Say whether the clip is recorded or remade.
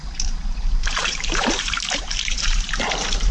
remade